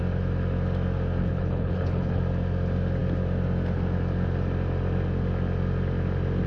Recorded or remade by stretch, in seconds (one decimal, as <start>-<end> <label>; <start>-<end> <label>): 0.0-1.2 recorded; 1.2-2.2 remade; 2.2-6.5 recorded